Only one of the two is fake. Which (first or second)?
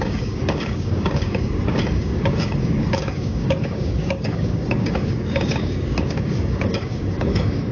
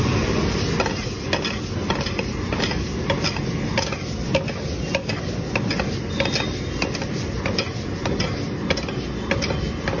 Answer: first